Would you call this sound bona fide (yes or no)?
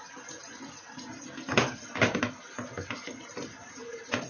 yes